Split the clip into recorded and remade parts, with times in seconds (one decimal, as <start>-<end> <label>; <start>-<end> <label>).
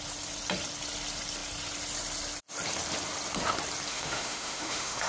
0.0-3.9 recorded; 3.9-5.1 remade